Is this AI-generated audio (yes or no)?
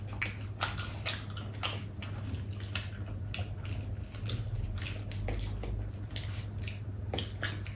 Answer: no